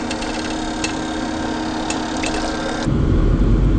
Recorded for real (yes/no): yes